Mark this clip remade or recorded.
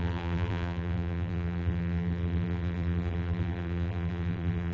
remade